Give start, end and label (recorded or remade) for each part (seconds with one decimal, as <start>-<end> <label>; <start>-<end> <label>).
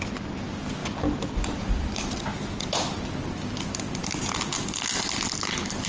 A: 0.0-5.9 recorded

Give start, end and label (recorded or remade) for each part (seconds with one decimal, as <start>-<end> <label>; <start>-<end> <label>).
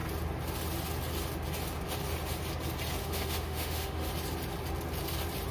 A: 0.0-3.0 recorded; 3.0-4.1 remade; 4.1-5.5 recorded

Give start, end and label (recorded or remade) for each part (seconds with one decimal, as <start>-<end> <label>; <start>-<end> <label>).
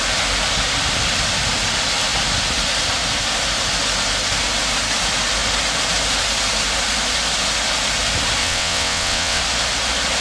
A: 0.0-8.4 recorded; 8.4-9.4 remade; 9.4-10.2 recorded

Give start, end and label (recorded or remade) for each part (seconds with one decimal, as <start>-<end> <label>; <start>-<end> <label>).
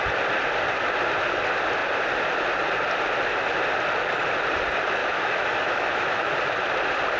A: 0.0-5.0 recorded; 5.0-6.3 remade; 6.3-7.2 recorded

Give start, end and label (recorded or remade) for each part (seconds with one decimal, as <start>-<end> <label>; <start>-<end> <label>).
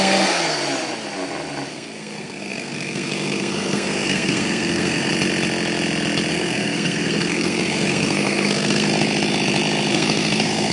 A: 0.0-0.6 remade; 0.6-1.7 recorded; 1.7-5.1 remade; 5.1-6.3 recorded; 6.3-8.9 remade; 8.9-9.9 recorded; 9.9-10.7 remade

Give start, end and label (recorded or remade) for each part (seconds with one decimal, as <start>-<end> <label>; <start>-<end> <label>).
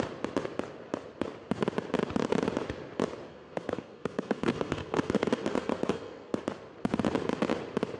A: 0.0-3.3 recorded; 3.3-6.4 remade; 6.4-8.0 recorded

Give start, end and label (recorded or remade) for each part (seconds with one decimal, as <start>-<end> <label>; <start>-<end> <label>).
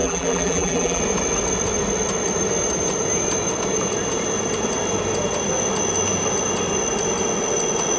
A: 0.0-1.0 remade; 1.0-8.0 recorded